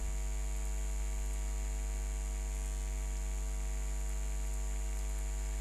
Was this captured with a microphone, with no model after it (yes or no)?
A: yes